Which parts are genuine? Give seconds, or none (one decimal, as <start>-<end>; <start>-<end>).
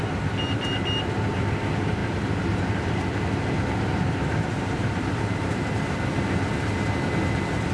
0.0-2.0; 3.4-3.9; 5.6-7.7